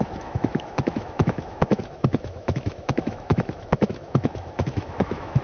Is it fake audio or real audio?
fake